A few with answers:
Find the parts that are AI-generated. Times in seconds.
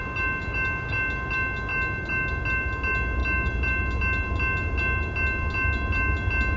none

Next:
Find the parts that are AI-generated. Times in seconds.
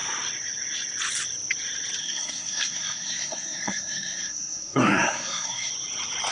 2.0-5.7 (codec, SNAC)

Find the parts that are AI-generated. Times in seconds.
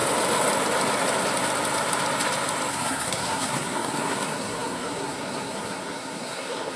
2.7-6.8 (codec, SNAC)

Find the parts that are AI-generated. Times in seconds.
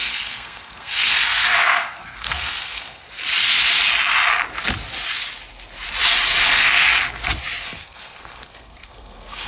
0.0-3.0 (codec, SNAC); 6.4-6.9; 7.6-9.5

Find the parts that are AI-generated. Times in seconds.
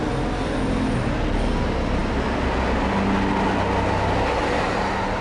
none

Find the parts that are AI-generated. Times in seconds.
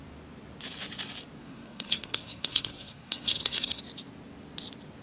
1.4-3.8 (codec, SNAC)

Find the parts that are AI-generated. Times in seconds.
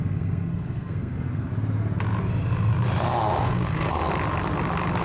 0.0-1.5 (codec, SNAC); 3.4-4.0